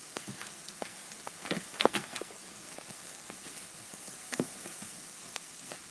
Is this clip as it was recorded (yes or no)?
no